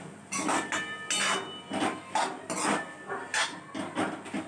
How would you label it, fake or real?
real